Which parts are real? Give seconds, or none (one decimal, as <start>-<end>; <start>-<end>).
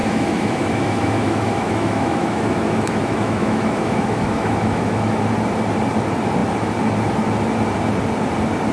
5.2-8.7